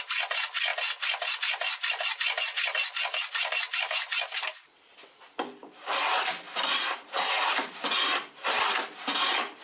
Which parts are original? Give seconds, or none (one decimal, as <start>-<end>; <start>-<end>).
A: 0.0-5.6; 8.7-9.6